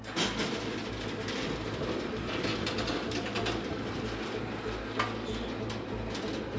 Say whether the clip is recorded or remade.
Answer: recorded